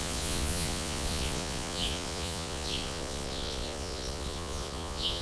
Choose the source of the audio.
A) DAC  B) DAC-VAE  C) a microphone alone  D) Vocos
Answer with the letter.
D